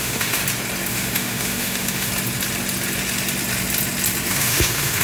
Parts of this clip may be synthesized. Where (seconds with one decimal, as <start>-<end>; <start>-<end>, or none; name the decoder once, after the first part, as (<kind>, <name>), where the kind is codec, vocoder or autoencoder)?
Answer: 0.0-0.4 (autoencoder, DAC-VAE); 0.9-2.1; 4.3-5.0

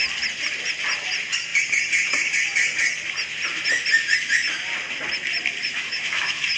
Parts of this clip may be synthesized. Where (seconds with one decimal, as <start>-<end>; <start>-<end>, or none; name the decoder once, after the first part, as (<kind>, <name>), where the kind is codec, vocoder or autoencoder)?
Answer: 5.7-6.6 (autoencoder, DAC-VAE)

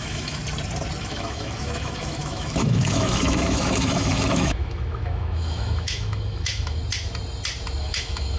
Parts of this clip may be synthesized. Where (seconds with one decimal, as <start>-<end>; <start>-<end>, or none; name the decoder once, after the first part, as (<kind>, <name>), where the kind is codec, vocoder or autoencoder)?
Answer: 0.0-0.4 (autoencoder, DAC-VAE); 1.0-6.8; 7.8-8.4